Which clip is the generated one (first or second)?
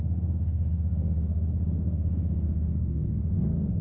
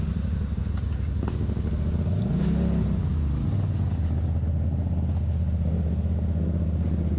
first